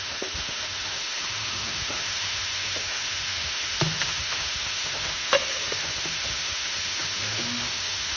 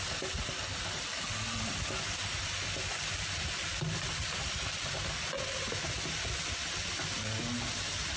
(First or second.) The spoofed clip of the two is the first